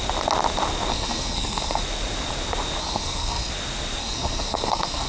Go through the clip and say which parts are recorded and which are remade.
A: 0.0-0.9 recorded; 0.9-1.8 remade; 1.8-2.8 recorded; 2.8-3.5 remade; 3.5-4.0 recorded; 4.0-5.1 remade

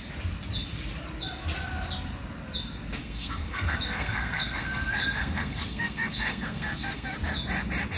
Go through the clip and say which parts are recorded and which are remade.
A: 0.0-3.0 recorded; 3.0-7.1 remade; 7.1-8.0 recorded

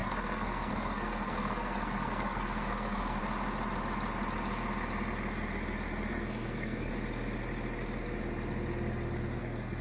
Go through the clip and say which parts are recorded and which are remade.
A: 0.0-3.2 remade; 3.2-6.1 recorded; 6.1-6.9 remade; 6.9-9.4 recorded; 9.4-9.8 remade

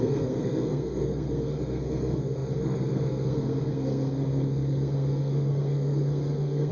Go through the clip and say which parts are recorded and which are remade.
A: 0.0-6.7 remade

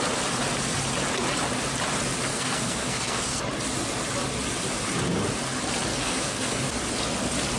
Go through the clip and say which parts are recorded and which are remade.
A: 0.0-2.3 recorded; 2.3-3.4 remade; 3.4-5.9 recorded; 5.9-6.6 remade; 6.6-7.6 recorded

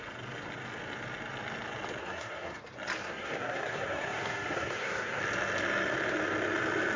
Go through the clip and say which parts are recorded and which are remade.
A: 0.0-2.0 recorded; 2.0-2.6 remade; 2.6-3.0 recorded; 3.0-5.2 remade; 5.2-7.0 recorded